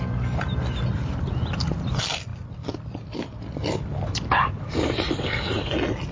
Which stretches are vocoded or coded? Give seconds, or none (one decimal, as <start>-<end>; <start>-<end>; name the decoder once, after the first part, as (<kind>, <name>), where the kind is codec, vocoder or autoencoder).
none